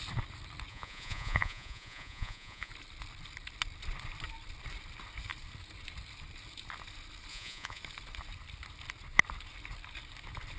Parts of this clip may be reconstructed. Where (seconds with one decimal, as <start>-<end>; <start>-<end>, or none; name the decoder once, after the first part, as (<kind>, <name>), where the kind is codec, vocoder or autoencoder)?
0.7-2.7 (vocoder, Vocos); 7.3-7.8